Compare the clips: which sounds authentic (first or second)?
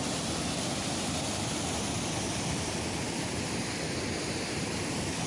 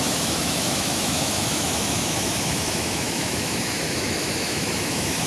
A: first